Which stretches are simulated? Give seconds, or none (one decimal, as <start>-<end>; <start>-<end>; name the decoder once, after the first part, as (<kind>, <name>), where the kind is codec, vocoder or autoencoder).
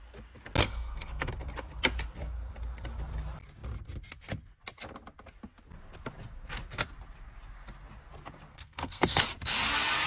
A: 0.6-1.3 (codec, SNAC); 8.5-9.2